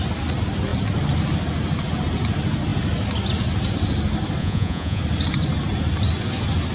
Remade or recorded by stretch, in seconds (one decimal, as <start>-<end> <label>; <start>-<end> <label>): 0.0-4.4 recorded; 4.4-5.0 remade; 5.0-6.7 recorded